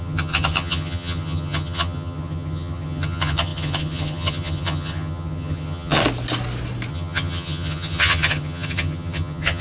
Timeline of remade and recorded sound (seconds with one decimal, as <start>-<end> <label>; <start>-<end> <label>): 0.0-6.0 remade; 6.0-6.9 recorded; 6.9-9.6 remade

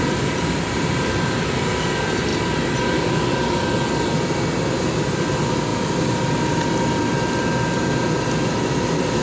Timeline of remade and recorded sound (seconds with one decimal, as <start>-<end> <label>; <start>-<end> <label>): 0.0-9.2 recorded

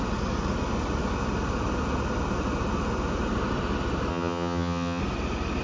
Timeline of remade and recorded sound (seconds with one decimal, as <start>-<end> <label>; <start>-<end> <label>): 0.0-4.1 recorded; 4.1-5.0 remade; 5.0-5.6 recorded

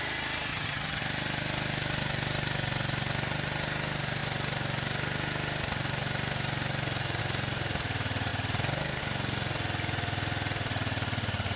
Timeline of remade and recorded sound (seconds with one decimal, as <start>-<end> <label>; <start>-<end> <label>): 0.0-0.5 recorded; 0.5-1.0 remade; 1.0-11.6 recorded

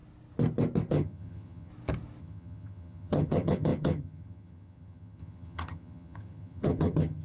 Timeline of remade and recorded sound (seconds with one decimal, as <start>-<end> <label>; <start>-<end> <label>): 0.0-0.9 recorded; 0.9-1.7 remade; 1.7-2.2 recorded; 2.2-7.2 remade

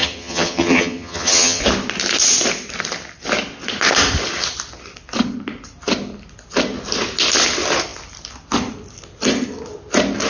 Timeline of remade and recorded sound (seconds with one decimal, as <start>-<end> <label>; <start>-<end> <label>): 0.0-1.6 remade; 1.6-10.3 recorded

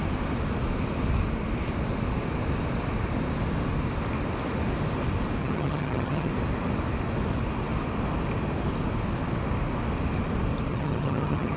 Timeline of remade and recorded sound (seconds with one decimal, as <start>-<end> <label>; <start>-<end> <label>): 0.0-5.4 recorded; 5.4-6.3 remade; 6.3-10.7 recorded; 10.7-11.6 remade

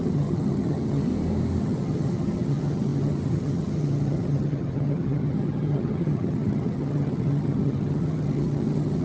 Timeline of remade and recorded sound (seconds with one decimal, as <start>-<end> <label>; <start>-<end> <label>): 0.0-1.1 remade; 1.1-1.6 recorded; 1.6-9.0 remade